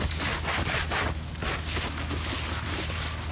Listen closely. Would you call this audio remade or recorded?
recorded